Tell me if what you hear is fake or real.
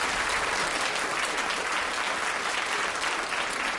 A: real